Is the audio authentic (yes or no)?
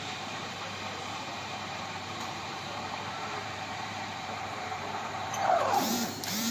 no